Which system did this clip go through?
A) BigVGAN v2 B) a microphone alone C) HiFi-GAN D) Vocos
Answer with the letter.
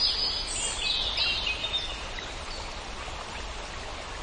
B